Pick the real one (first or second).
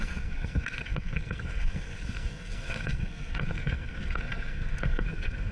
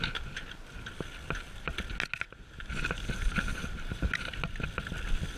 second